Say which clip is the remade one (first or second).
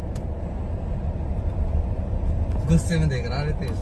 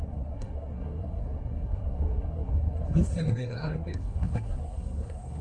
second